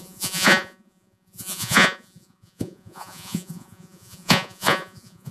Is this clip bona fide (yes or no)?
no